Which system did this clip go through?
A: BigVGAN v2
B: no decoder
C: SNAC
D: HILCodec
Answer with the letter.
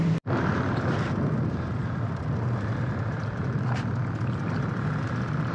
A